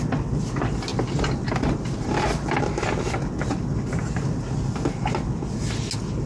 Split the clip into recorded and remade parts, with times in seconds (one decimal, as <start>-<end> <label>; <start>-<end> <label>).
0.0-0.9 recorded; 0.9-2.1 remade; 2.1-6.3 recorded